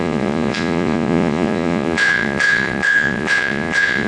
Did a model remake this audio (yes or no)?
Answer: yes